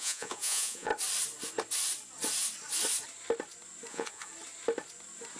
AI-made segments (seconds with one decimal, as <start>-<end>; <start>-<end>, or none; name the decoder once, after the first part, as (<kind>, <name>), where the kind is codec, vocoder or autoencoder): 0.0-0.9 (vocoder, Vocos); 3.9-4.3